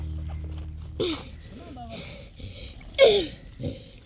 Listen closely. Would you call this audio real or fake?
real